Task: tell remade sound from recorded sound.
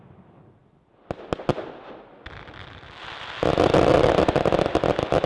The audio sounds recorded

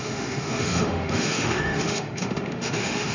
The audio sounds remade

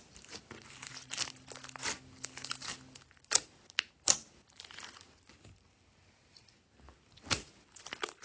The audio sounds recorded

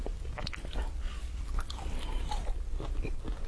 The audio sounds recorded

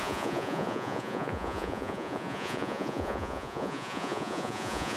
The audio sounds remade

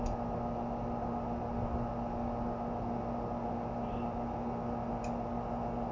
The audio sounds recorded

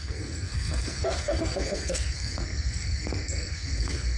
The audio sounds remade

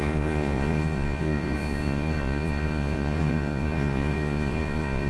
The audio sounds remade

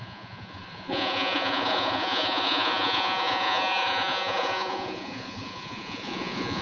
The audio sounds remade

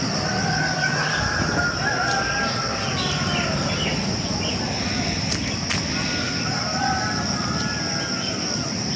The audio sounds recorded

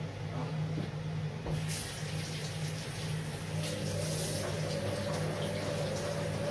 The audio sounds recorded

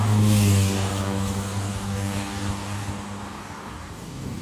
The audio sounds remade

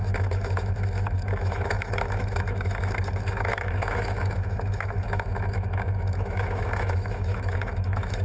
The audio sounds remade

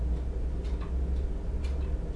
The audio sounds recorded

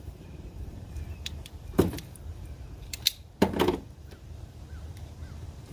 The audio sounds remade